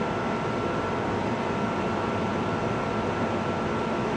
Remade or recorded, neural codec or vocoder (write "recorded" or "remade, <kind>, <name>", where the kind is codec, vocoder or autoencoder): recorded